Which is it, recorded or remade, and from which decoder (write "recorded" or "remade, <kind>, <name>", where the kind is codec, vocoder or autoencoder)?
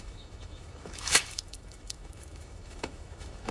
remade, autoencoder, DAC-VAE